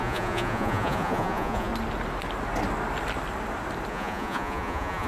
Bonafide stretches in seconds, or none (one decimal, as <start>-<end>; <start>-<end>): 1.7-3.9